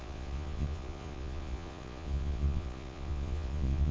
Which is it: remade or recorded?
remade